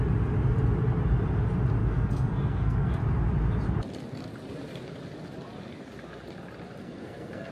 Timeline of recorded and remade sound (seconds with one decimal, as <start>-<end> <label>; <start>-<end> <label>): 0.0-1.8 recorded; 1.8-2.9 remade; 2.9-6.8 recorded; 6.8-7.5 remade